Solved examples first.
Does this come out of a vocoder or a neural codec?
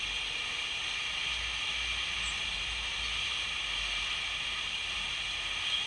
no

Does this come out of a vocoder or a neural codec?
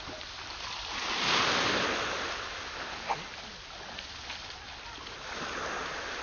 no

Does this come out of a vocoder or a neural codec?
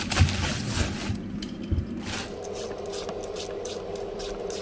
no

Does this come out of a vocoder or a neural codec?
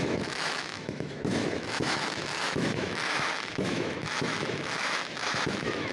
yes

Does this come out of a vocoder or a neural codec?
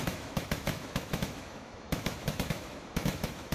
yes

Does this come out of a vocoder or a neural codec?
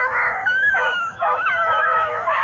yes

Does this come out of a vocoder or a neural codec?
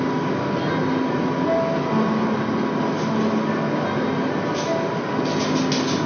no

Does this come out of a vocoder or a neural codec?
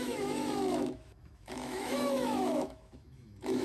yes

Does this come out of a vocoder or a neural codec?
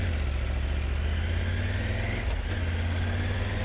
no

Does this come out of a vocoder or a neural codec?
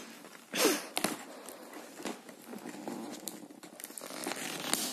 no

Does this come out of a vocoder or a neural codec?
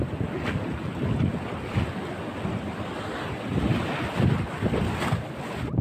no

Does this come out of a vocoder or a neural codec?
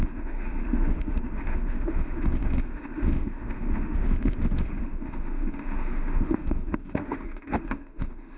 yes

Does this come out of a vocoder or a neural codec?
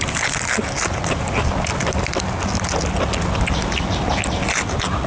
no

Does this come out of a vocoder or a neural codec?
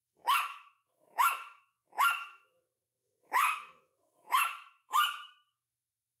yes